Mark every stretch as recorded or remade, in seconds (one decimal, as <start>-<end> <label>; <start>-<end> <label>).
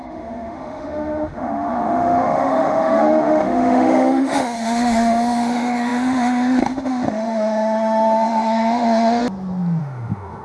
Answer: 0.0-9.2 remade; 9.2-9.8 recorded; 9.8-10.4 remade